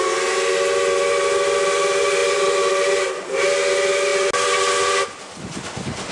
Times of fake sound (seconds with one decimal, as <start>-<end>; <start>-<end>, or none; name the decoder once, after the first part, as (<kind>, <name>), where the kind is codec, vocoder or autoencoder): none